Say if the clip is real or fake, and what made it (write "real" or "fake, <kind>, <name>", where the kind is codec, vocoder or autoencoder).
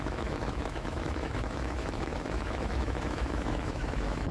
fake, autoencoder, DAC-VAE